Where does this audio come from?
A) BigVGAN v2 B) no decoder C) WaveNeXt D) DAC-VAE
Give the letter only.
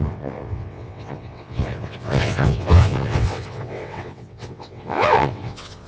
C